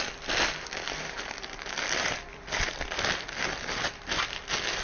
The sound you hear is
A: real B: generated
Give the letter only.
A